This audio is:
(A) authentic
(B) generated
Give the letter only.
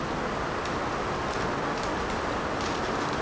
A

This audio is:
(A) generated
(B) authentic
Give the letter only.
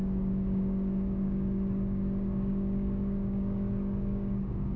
A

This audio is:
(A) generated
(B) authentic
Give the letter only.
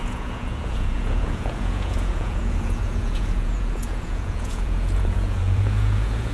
A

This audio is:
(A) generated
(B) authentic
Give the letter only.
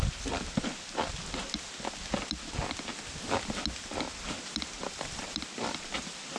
B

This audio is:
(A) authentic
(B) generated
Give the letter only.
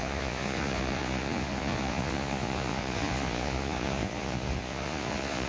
B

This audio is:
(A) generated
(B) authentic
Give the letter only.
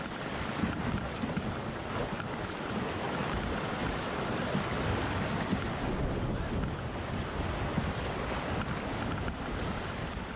B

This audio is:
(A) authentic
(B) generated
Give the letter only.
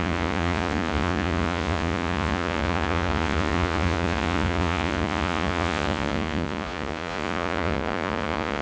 B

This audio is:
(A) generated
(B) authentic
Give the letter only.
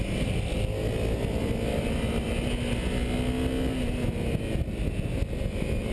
B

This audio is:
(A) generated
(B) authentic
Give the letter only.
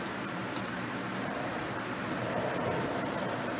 A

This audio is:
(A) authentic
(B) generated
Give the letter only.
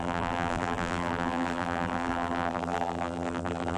B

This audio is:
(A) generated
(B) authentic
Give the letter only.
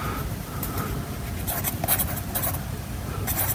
B